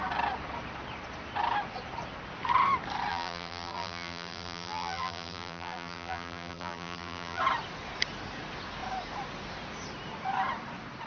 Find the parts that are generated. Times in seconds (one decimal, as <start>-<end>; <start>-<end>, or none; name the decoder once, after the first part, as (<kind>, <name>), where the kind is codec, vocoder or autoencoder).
3.1-7.4 (vocoder, BigVGAN v2)